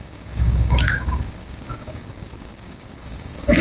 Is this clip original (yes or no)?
no